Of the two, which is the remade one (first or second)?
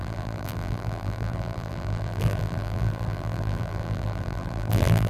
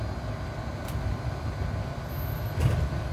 first